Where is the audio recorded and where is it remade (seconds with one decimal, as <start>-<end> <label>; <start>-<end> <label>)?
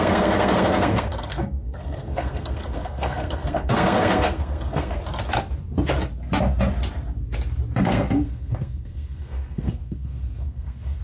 0.0-5.0 remade; 5.0-7.8 recorded; 7.8-11.0 remade